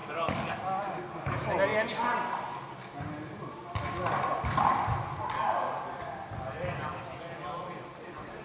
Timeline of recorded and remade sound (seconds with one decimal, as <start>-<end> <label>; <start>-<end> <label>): 0.0-8.4 recorded